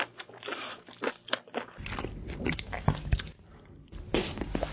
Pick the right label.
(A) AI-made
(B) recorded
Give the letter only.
B